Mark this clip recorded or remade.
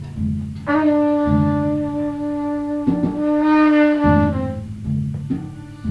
recorded